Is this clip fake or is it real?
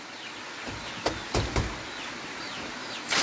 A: real